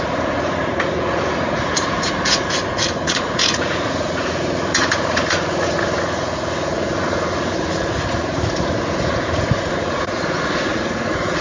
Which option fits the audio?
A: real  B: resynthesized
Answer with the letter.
B